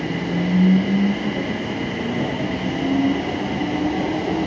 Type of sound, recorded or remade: recorded